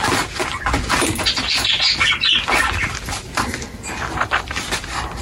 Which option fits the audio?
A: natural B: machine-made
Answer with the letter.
A